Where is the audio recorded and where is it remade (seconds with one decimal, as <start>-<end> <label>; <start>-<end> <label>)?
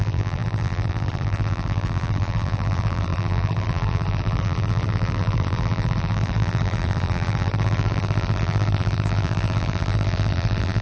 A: 0.0-10.8 remade